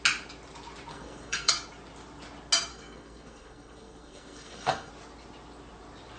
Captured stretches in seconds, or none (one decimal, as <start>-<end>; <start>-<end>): 0.0-0.9; 1.5-2.7; 4.9-6.2